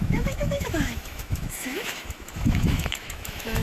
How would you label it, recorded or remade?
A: remade